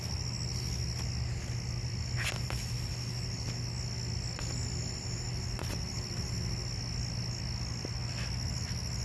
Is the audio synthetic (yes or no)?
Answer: no